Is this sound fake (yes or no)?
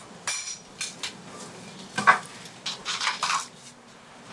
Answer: no